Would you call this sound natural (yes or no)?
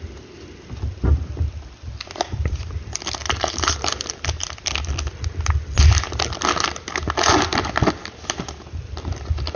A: yes